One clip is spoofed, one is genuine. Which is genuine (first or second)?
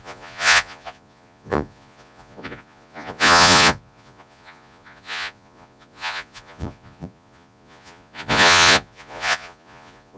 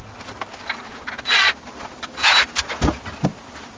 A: second